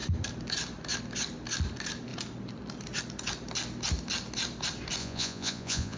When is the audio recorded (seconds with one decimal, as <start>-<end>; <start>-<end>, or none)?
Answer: 0.0-5.0